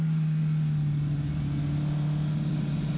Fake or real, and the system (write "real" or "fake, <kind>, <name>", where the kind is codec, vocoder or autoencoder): real